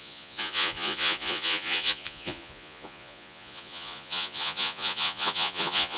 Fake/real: fake